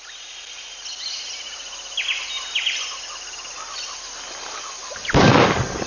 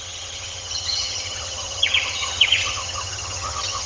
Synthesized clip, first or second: second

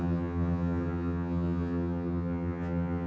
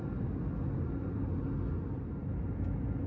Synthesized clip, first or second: first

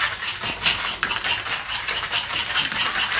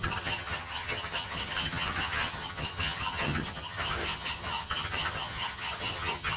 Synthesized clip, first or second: second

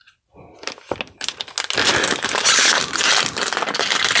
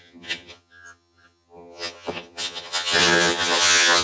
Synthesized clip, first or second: second